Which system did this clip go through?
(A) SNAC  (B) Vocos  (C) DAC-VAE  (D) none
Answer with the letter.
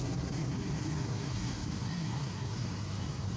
A